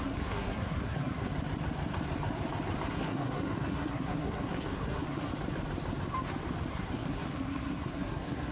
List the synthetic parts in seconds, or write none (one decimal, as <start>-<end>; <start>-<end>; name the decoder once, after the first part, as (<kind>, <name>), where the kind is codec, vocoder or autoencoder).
0.0-1.3 (codec, SNAC); 2.9-5.3; 6.7-8.5